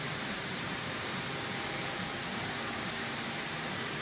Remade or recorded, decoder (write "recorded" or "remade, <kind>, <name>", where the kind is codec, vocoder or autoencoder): remade, vocoder, BigVGAN v2